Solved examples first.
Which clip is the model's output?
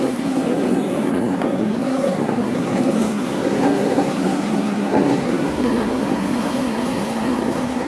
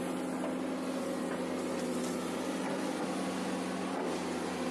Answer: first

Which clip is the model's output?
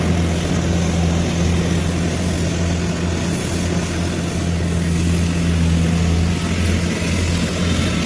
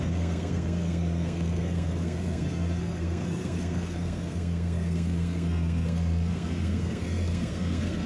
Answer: second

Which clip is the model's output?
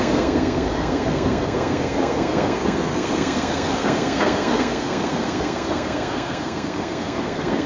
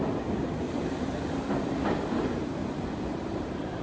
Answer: first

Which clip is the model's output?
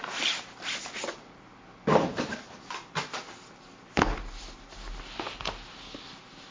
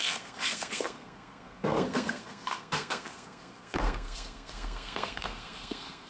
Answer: second